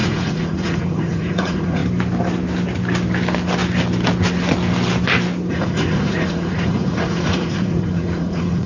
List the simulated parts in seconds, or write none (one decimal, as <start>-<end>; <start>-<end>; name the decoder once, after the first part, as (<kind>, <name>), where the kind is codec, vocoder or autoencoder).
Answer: 0.0-1.8 (vocoder, Vocos); 5.5-8.7